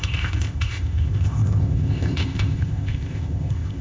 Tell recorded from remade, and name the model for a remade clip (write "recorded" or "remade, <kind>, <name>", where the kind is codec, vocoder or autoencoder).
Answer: remade, codec, ZipCodec